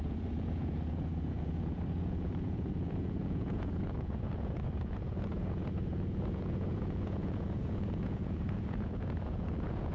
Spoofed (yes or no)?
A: yes